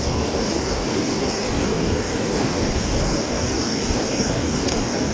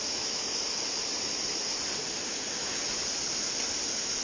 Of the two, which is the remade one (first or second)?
first